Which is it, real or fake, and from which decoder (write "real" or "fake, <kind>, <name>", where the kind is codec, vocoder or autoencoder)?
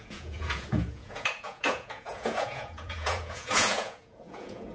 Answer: fake, vocoder, Vocos